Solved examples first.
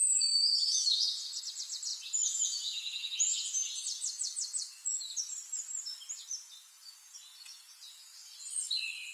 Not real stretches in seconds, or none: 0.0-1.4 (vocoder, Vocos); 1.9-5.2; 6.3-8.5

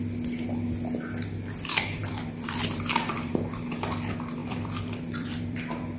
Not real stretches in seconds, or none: 2.0-3.3 (vocoder, BigVGAN v2); 4.4-6.0